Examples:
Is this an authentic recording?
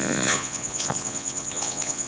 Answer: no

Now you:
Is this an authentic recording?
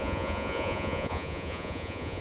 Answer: no